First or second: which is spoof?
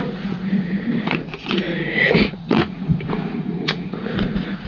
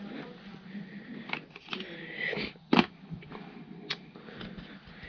first